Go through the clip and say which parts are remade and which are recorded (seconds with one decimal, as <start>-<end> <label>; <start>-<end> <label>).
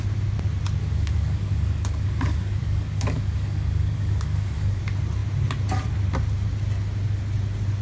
0.0-0.8 recorded; 0.8-4.8 remade; 4.8-7.8 recorded